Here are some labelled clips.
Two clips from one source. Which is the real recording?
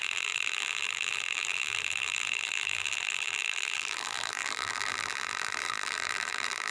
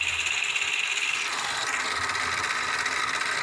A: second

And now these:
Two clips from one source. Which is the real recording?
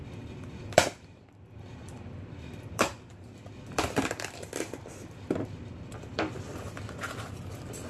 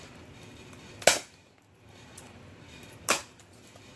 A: second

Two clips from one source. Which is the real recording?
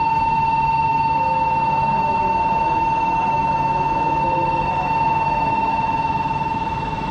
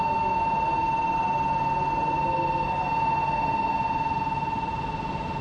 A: second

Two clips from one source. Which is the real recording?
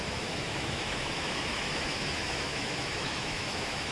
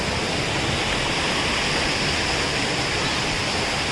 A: second